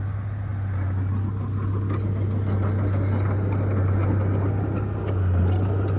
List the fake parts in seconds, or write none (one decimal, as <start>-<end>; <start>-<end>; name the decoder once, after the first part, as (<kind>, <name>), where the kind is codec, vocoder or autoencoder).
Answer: none